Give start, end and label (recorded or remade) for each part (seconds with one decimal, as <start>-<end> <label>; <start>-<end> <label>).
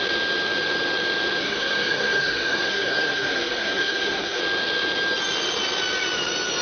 0.0-1.4 recorded; 1.4-4.4 remade; 4.4-6.6 recorded